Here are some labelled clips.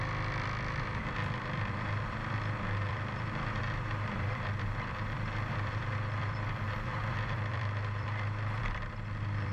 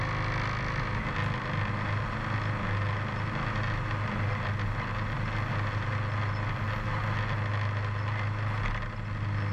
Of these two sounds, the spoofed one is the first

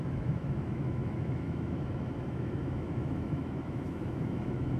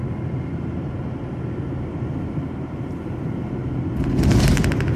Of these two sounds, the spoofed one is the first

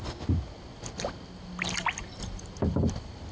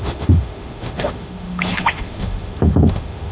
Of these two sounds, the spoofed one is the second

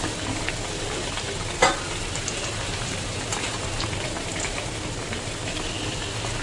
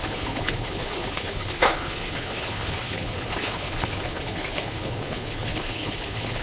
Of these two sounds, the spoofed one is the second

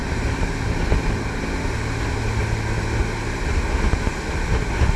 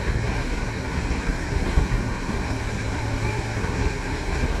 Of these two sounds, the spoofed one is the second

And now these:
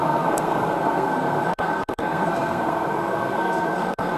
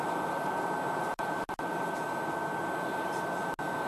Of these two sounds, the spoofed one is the first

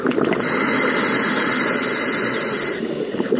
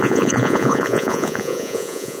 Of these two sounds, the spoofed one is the second